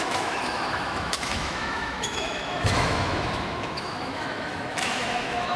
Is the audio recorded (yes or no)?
no